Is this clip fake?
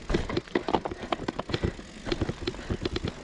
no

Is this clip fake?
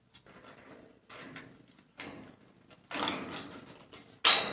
no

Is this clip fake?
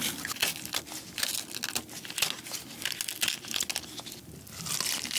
no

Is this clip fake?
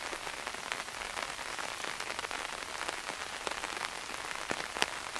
no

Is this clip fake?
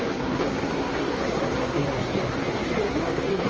yes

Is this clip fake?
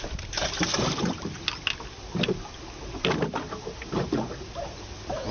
no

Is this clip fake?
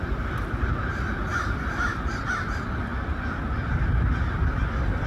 no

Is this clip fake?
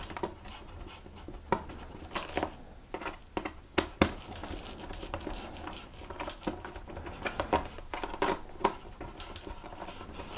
no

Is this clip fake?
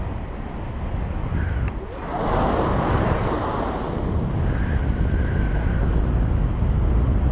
no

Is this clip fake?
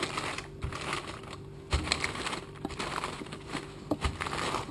no